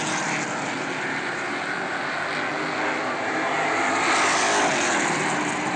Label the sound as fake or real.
real